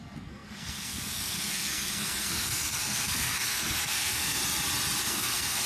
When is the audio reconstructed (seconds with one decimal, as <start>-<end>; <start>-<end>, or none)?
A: 0.0-4.4; 5.0-5.7